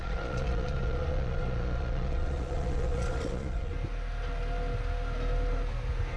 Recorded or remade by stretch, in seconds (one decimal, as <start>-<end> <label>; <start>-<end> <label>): 0.0-3.7 remade; 3.7-6.2 recorded